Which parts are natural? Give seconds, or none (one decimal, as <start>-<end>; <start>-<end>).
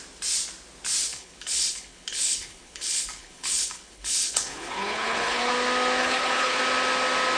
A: 0.0-1.1; 5.5-6.0; 6.6-7.4